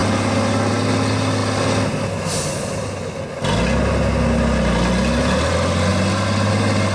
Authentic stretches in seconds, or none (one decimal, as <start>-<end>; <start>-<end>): 0.0-6.9